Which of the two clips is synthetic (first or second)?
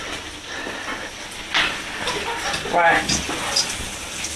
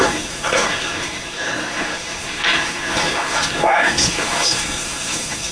second